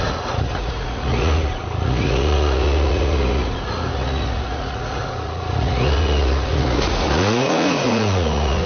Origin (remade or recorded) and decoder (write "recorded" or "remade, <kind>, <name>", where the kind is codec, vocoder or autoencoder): remade, vocoder, Vocos